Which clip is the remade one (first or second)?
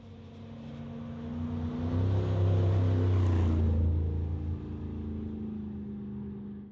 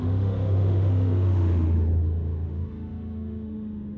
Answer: second